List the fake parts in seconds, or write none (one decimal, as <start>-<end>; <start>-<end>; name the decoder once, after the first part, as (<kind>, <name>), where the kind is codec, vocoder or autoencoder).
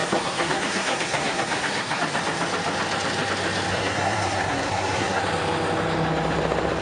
0.0-2.0 (codec, SNAC); 3.7-5.2